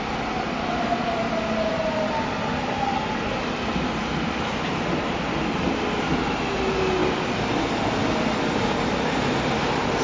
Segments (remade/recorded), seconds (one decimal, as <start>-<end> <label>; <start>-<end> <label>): 0.0-10.0 recorded